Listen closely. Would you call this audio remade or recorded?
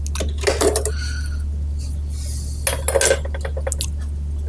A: recorded